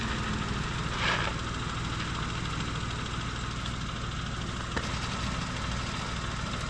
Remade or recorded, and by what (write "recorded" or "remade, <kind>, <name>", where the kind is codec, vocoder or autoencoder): recorded